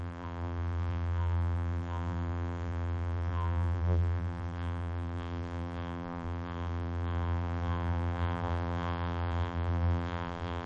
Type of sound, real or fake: fake